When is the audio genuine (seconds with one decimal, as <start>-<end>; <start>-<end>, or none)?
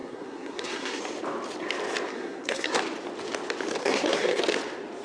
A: 1.0-2.1; 2.8-3.8; 4.4-5.0